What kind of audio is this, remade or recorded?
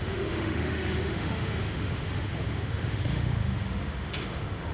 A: remade